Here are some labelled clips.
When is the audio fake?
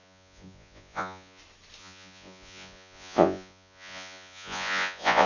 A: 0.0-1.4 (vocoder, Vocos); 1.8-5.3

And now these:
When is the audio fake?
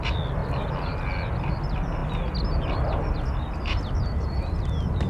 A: none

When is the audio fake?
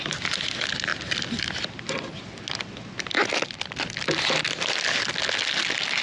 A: none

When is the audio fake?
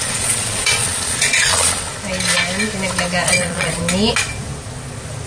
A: 0.0-1.9 (vocoder, Vocos); 3.3-3.8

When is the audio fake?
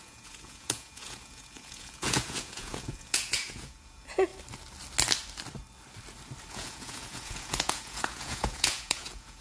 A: 0.0-4.3 (vocoder, Vocos); 6.5-9.4